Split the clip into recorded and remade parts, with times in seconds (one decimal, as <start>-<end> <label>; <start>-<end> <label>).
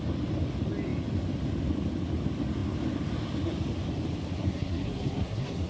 0.0-4.4 recorded; 4.4-5.7 remade